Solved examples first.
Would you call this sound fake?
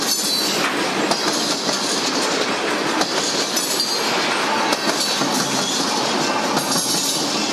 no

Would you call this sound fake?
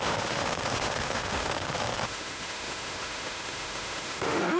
yes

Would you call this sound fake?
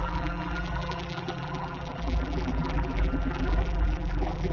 yes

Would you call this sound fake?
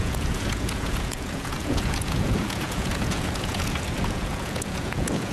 yes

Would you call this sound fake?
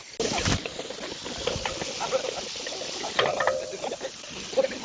no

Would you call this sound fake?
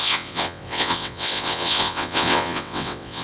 yes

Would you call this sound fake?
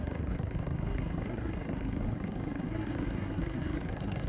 yes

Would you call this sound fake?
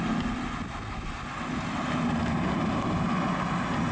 no